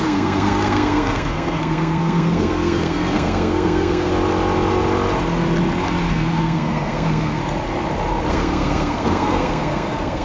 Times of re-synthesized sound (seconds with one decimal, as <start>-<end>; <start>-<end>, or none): 0.0-4.1; 6.1-7.4; 8.3-10.2